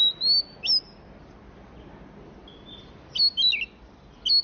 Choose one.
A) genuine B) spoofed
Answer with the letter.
A